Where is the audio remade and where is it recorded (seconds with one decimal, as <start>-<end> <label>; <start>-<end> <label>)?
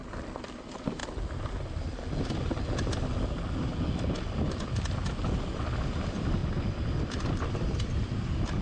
0.0-0.6 recorded; 0.6-1.0 remade; 1.0-5.8 recorded; 5.8-6.4 remade; 6.4-7.5 recorded; 7.5-8.6 remade